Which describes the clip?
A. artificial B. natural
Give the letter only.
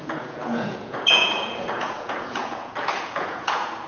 A